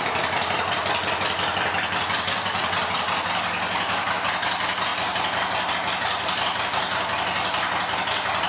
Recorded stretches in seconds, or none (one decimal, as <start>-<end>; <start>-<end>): 0.0-8.5